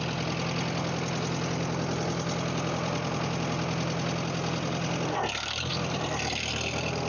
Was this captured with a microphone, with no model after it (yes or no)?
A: yes